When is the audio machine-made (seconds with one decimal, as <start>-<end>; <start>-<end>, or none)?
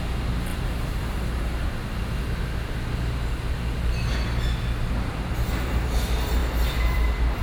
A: 0.5-2.0